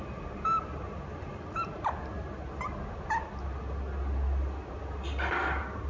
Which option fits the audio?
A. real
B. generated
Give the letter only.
A